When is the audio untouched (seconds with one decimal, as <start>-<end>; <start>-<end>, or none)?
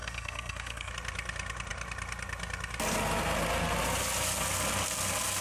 0.9-5.4